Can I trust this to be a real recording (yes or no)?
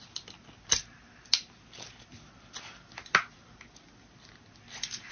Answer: yes